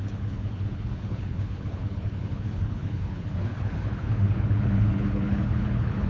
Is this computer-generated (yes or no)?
yes